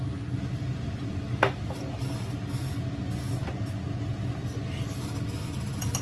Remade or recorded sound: recorded